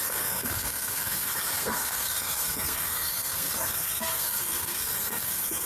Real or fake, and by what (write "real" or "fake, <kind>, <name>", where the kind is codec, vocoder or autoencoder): fake, codec, SNAC